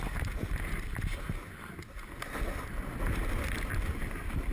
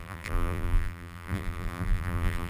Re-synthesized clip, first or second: second